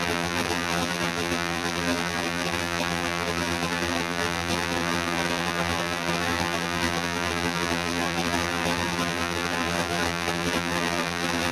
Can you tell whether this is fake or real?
fake